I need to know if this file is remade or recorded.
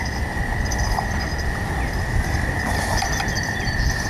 recorded